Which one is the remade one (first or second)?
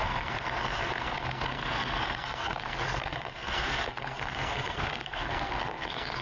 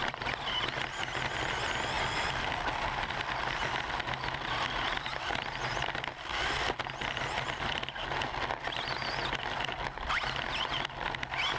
first